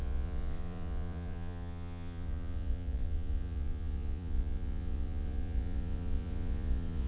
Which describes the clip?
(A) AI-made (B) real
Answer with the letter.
A